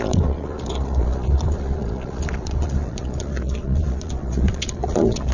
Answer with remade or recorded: remade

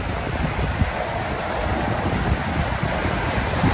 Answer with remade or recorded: recorded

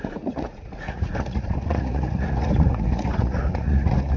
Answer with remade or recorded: remade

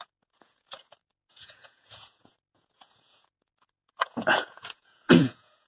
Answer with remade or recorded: remade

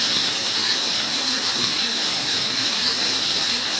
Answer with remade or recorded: remade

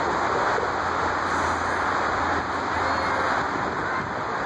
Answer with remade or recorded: recorded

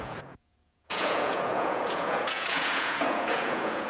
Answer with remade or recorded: remade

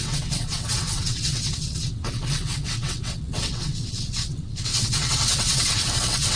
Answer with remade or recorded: remade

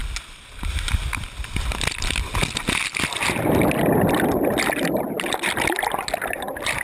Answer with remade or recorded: recorded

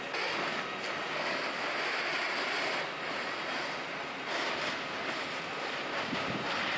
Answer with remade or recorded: recorded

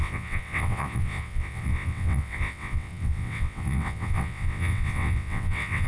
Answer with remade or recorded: remade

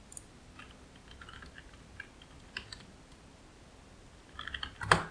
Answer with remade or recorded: recorded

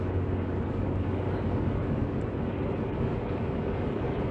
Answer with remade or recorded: remade